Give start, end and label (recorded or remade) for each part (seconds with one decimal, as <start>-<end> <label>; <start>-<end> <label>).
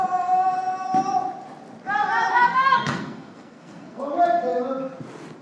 0.0-2.3 recorded; 2.3-4.1 remade; 4.1-5.4 recorded